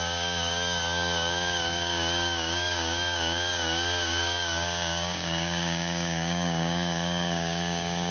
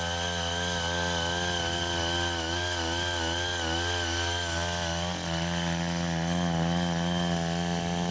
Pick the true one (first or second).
second